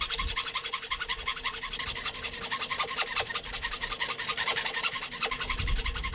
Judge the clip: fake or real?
real